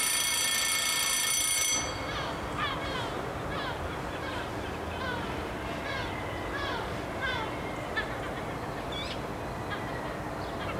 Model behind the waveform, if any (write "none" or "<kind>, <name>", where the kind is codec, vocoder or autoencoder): none